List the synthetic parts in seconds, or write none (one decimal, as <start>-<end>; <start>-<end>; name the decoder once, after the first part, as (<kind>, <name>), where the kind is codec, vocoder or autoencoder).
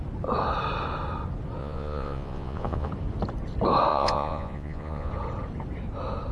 1.6-2.9 (vocoder, Vocos); 3.9-5.1